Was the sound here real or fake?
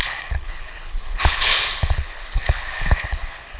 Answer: fake